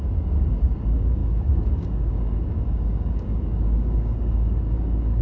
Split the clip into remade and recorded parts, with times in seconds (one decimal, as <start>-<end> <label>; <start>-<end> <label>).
0.0-5.2 remade